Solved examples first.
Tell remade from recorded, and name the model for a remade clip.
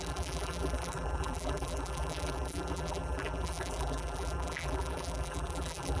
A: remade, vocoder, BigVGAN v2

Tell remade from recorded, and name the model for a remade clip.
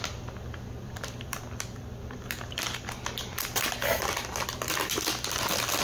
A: remade, vocoder, BigVGAN v2